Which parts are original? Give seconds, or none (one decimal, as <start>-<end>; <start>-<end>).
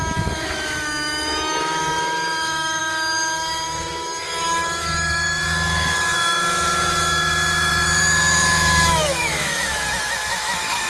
none